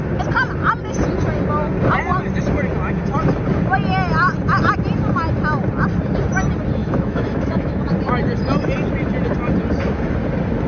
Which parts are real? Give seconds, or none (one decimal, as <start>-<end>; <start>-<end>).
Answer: 0.0-6.8; 7.9-10.7